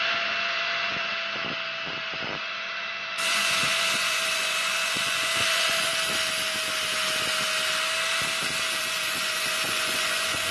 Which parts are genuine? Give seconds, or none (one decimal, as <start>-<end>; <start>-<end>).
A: 1.1-2.4; 5.9-8.8